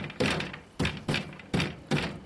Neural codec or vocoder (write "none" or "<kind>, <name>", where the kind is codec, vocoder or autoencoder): none